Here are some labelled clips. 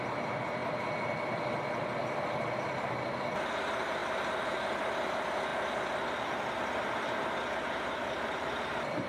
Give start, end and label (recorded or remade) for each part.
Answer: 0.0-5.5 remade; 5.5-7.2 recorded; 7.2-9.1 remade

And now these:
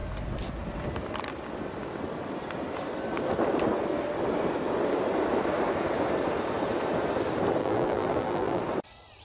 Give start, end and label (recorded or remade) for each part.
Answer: 0.0-7.6 recorded; 7.6-8.6 remade; 8.6-9.2 recorded

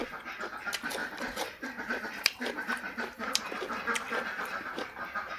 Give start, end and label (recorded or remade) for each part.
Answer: 0.0-1.0 recorded; 1.0-3.4 remade; 3.4-5.4 recorded

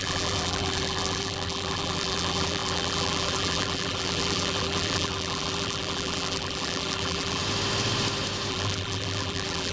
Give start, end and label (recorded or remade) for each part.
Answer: 0.0-7.4 remade; 7.4-8.5 recorded; 8.5-9.7 remade

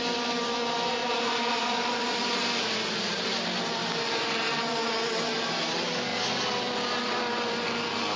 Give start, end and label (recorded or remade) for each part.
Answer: 0.0-1.0 recorded; 1.0-1.6 remade; 1.6-3.8 recorded; 3.8-4.9 remade; 4.9-8.2 recorded

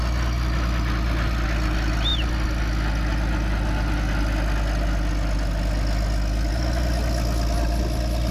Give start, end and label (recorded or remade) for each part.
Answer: 0.0-8.3 recorded